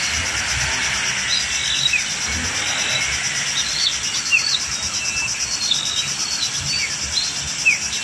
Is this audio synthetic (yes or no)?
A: no